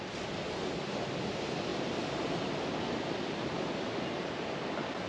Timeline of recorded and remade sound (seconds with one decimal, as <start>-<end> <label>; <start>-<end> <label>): 0.0-5.1 recorded